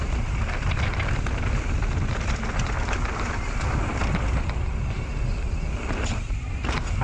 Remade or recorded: recorded